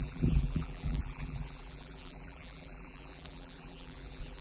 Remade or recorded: remade